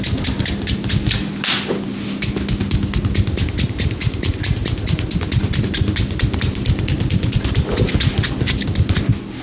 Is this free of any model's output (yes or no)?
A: yes